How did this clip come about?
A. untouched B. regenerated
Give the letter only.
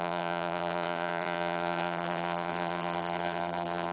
B